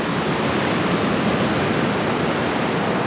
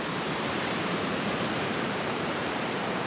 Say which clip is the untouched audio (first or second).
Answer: first